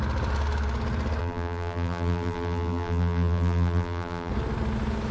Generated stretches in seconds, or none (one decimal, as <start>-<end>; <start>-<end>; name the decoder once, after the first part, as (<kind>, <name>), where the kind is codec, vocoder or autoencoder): 1.2-4.3 (vocoder, BigVGAN v2)